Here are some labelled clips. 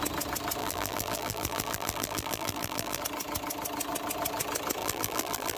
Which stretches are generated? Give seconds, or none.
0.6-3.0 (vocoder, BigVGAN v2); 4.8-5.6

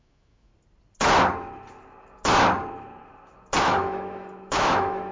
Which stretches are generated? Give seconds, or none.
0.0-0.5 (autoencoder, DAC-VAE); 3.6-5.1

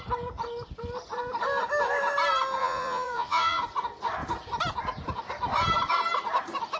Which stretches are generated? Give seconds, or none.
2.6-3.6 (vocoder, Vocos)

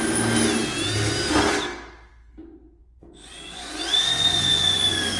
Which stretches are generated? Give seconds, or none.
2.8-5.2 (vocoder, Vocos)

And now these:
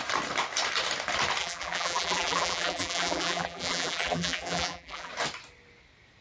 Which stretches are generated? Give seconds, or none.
1.4-5.1 (vocoder, BigVGAN v2)